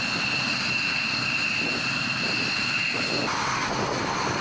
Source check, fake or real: real